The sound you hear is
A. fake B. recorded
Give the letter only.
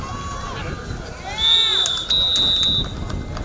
B